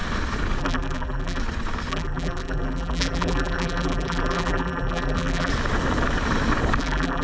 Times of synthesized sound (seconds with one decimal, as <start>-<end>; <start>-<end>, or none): 0.6-1.4; 1.9-5.5; 6.8-7.2